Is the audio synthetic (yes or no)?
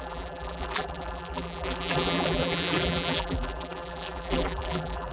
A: yes